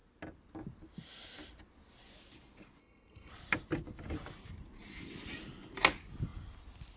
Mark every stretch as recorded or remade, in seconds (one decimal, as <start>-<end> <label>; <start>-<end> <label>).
0.0-2.8 recorded; 2.8-3.3 remade; 3.3-7.0 recorded